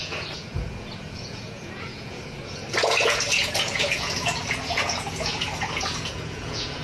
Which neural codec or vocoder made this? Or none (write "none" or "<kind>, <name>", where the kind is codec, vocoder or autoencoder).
vocoder, Vocos